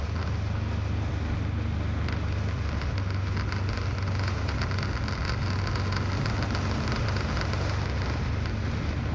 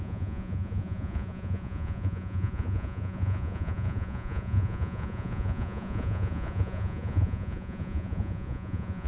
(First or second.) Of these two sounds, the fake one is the second